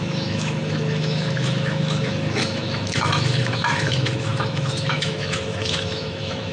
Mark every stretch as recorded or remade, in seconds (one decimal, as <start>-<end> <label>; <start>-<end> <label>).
0.0-6.5 remade

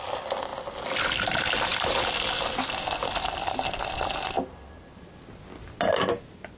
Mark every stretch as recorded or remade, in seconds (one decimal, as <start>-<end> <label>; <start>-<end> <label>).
0.0-6.6 recorded

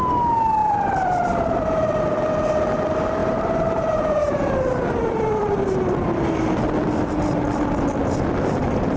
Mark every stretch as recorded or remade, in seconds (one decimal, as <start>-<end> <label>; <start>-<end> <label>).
0.0-0.6 recorded; 0.6-2.3 remade; 2.3-3.2 recorded; 3.2-4.6 remade; 4.6-9.0 recorded

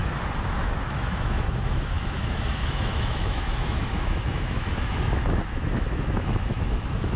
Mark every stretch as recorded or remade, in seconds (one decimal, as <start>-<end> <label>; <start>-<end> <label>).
0.0-0.6 recorded; 0.6-7.2 remade